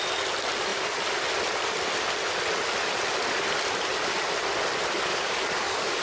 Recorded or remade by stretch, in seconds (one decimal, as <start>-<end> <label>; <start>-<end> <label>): 0.0-5.1 recorded; 5.1-6.0 remade

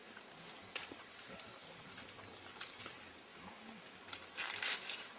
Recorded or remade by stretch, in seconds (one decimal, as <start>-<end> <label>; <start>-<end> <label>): 0.0-0.8 remade; 0.8-5.2 recorded

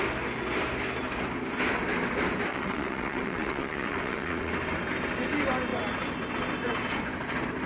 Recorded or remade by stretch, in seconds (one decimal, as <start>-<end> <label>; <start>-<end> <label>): 0.0-2.5 recorded; 2.5-4.5 remade; 4.5-7.7 recorded

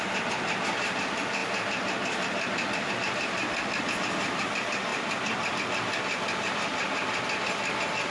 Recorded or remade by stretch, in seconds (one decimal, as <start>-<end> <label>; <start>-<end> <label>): 0.0-8.1 recorded

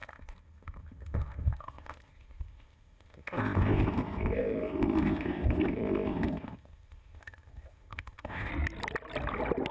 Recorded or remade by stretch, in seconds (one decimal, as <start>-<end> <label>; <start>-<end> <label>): 0.0-8.5 remade; 8.5-9.7 recorded